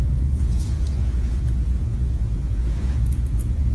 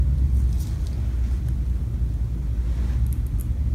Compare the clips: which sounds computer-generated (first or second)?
first